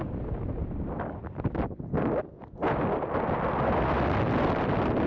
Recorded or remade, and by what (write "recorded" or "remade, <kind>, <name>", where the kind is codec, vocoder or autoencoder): recorded